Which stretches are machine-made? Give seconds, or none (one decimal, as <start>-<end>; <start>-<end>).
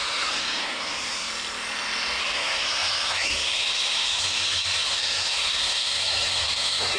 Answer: 0.0-1.3; 2.2-7.0